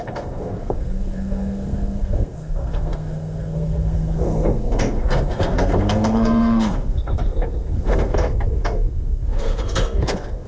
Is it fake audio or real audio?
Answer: fake